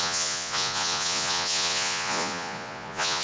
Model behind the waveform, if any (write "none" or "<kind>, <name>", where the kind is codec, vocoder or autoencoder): vocoder, Vocos